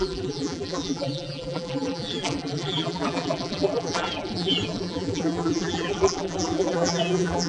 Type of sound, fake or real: fake